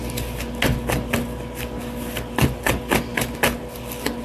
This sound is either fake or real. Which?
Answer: real